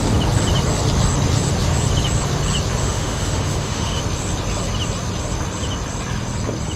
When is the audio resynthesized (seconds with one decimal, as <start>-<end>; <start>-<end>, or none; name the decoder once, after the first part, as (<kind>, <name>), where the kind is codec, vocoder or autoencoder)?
2.8-4.0 (autoencoder, DAC-VAE)